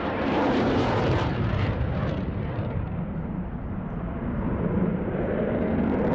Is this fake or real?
fake